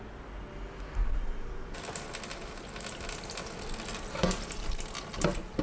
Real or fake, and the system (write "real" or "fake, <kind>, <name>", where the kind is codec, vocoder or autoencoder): real